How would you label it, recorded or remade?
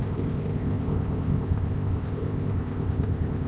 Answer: remade